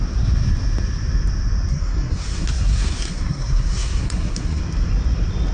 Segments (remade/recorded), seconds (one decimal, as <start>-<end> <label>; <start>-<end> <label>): 0.0-1.7 recorded; 1.7-4.6 remade; 4.6-5.5 recorded